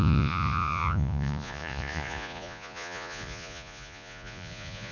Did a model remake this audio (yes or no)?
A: yes